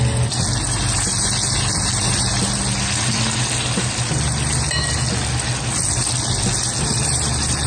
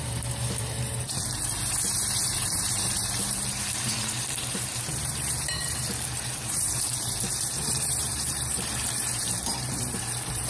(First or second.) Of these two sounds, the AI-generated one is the second